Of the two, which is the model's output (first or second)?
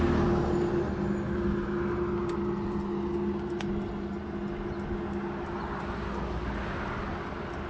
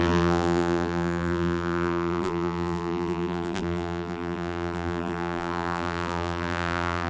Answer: second